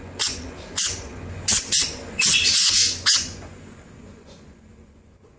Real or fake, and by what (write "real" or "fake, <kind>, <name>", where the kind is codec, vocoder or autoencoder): fake, vocoder, Vocos